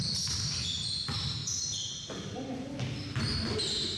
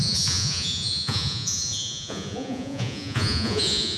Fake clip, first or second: second